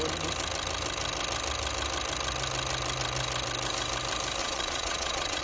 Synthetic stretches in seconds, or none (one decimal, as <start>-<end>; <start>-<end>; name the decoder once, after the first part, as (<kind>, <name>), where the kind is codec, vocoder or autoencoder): 4.4-5.4 (vocoder, Vocos)